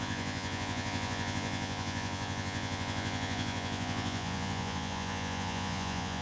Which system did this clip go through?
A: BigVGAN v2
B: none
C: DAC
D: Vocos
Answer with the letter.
D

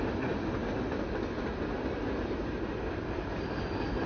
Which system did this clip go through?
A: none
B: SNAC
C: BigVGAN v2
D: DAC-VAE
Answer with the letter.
A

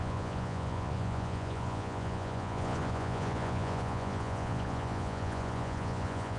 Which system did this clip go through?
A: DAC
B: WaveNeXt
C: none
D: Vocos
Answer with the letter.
D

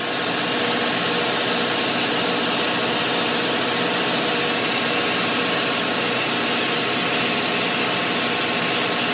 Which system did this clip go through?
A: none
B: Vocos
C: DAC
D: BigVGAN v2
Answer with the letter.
A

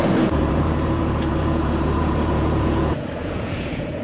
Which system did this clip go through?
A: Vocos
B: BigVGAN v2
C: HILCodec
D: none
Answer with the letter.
A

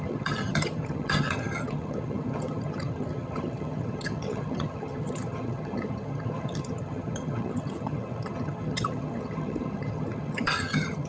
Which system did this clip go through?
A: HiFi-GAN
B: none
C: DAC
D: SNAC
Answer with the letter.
A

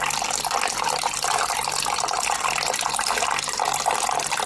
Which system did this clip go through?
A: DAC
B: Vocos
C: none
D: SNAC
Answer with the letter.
C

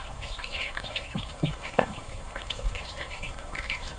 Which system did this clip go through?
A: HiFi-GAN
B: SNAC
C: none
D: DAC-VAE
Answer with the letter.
B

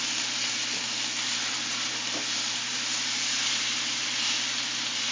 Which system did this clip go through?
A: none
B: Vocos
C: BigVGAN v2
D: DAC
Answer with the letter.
A